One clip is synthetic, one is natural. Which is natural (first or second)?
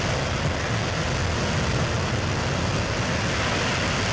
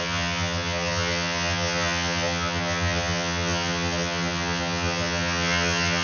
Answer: first